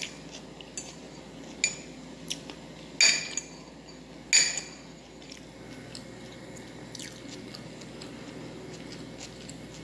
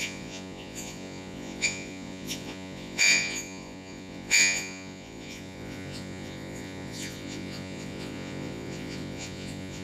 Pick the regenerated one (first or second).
second